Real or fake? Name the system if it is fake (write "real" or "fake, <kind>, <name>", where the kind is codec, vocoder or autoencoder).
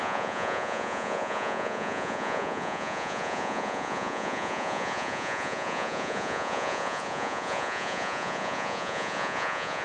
fake, vocoder, Vocos